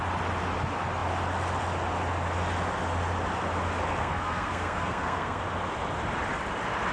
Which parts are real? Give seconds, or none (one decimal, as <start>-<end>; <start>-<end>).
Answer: 0.0-4.0; 5.4-6.9